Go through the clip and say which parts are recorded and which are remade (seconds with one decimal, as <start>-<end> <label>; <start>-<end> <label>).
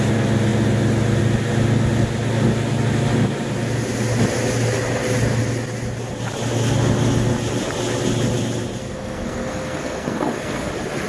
0.0-8.8 recorded; 8.8-10.7 remade; 10.7-11.1 recorded